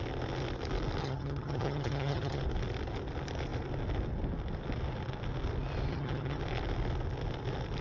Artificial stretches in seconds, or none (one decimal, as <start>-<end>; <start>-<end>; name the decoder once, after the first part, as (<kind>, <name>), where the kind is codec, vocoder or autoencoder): 1.0-2.4 (vocoder, HiFi-GAN); 5.9-6.4